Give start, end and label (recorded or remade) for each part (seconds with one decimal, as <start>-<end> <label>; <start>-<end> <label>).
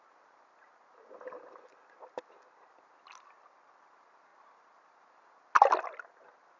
0.0-6.6 recorded